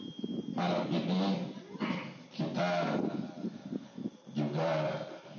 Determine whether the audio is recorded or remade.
recorded